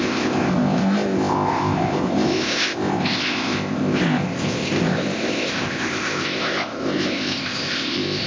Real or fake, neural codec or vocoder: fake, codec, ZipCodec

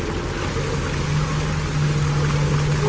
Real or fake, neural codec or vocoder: real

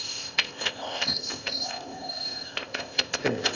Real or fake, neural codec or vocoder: fake, codec, ZipCodec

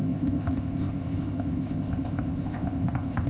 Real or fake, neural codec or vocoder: fake, codec, ZipCodec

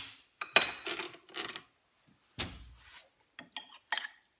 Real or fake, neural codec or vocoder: real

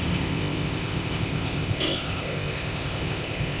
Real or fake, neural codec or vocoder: fake, codec, ZipCodec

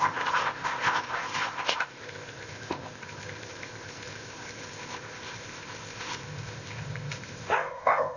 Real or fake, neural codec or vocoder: fake, codec, ZipCodec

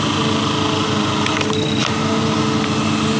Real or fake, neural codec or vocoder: real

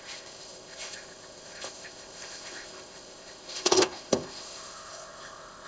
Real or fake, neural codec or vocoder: fake, codec, ZipCodec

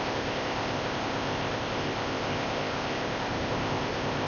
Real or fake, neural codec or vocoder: fake, codec, ZipCodec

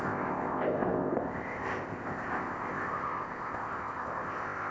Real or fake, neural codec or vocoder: fake, codec, ZipCodec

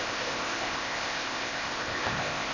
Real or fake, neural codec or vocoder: fake, codec, ZipCodec